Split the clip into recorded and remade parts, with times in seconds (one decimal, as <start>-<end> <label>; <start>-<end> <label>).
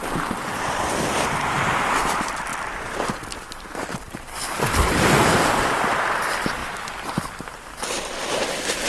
0.0-8.9 recorded